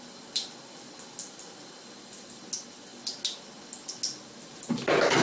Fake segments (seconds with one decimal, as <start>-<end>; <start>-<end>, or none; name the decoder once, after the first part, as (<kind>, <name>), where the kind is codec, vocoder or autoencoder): none

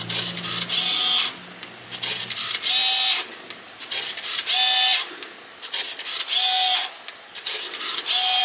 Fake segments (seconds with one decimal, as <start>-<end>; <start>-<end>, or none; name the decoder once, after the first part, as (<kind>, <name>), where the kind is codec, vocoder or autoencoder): none

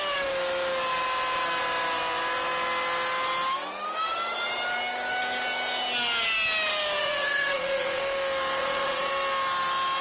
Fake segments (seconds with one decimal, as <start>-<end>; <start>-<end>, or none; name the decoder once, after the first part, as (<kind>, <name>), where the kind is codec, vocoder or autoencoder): 7.0-8.0 (vocoder, Vocos); 8.6-9.1

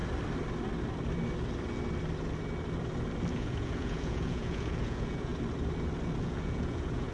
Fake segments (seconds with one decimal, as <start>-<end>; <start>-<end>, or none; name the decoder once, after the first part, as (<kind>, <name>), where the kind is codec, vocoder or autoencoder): 3.3-5.3 (vocoder, Vocos); 6.2-7.1